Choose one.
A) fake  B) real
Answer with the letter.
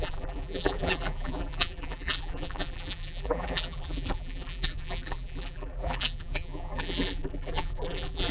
A